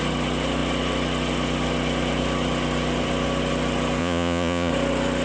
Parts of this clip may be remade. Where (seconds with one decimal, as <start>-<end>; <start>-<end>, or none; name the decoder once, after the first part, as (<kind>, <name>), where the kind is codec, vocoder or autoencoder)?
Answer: 4.0-4.7 (vocoder, Vocos)